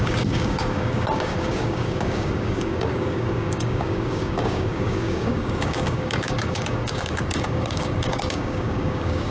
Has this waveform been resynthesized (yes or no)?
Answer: yes